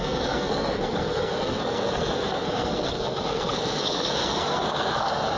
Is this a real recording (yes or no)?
no